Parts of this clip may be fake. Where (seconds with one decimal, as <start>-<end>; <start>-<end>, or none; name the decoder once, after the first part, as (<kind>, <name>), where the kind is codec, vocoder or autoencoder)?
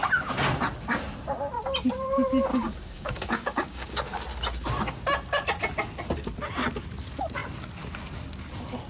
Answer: 2.5-4.0 (codec, DAC)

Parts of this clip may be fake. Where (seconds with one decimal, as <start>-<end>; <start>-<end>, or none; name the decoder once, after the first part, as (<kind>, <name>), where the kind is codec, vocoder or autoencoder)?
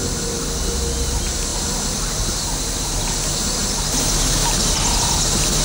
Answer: none